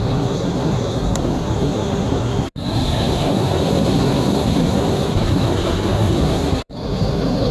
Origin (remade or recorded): remade